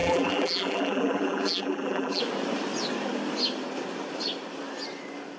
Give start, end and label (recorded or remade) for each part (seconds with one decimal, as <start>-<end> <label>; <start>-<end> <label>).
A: 0.0-2.2 remade; 2.2-5.4 recorded

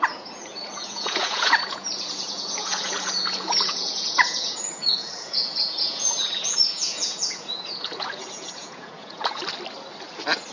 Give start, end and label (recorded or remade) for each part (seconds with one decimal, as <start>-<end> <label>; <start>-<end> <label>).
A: 0.0-9.4 remade; 9.4-10.5 recorded

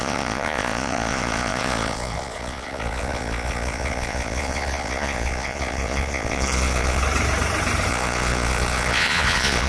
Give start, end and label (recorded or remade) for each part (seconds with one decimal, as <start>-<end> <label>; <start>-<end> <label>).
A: 0.0-7.0 remade; 7.0-7.9 recorded; 7.9-9.7 remade

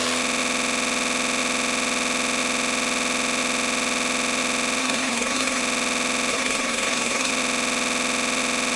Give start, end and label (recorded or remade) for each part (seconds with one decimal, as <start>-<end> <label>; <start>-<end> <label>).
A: 0.0-4.8 recorded; 4.8-5.6 remade; 5.6-6.3 recorded; 6.3-7.3 remade; 7.3-8.8 recorded

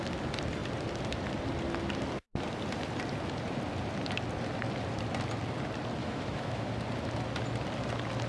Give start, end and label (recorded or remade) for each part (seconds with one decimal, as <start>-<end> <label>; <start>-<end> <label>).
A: 0.0-6.0 recorded; 6.0-6.7 remade; 6.7-8.3 recorded

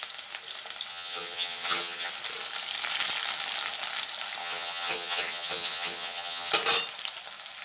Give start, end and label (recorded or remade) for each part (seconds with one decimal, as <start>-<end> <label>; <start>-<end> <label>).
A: 0.0-0.9 recorded; 0.9-2.1 remade; 2.1-4.4 recorded; 4.4-6.5 remade; 6.5-7.6 recorded

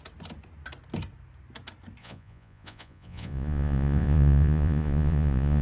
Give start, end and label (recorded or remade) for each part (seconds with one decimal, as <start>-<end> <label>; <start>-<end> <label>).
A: 0.0-2.0 recorded; 2.0-5.6 remade